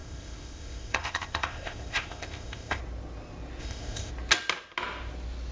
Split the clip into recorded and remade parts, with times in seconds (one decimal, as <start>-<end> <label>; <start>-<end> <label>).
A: 0.0-2.8 remade; 2.8-3.6 recorded; 3.6-4.1 remade; 4.1-5.5 recorded